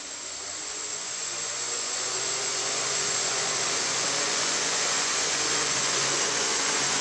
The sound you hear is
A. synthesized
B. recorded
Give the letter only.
A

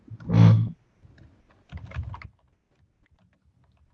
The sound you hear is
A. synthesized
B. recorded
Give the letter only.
B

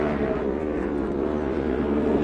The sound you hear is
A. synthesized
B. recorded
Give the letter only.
A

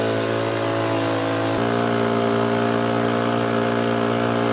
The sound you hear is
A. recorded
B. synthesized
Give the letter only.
A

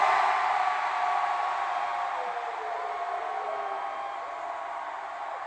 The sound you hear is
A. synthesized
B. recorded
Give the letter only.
B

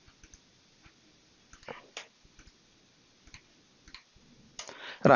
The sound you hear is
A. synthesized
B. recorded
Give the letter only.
B